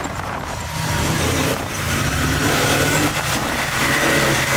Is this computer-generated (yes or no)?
yes